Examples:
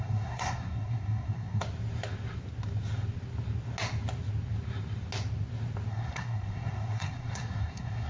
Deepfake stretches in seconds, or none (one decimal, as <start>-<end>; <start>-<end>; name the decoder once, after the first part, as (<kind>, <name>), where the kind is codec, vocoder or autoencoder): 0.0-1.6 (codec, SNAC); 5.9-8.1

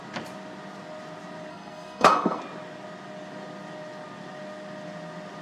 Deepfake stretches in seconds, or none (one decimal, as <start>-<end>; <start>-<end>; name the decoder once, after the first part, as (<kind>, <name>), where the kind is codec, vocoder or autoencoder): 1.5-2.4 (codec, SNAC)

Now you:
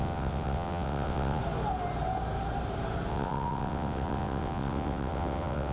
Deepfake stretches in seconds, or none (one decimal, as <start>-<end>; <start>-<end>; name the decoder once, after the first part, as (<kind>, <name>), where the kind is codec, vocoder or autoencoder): 0.0-1.4 (vocoder, WaveNeXt); 3.1-5.7

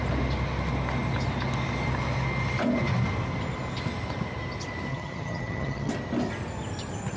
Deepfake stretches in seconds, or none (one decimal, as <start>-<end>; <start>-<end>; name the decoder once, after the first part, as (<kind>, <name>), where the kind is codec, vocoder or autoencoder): 4.9-5.9 (vocoder, HiFi-GAN)

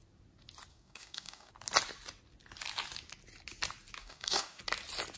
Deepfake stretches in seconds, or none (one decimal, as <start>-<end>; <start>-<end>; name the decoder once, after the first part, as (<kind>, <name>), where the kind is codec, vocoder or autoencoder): 0.7-1.5 (codec, DAC); 4.0-4.6

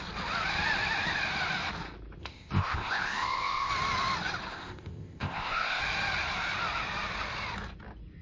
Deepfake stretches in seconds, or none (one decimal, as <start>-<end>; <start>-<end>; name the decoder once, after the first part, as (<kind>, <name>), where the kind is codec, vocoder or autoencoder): 2.2-3.7 (codec, ZipCodec); 4.5-5.8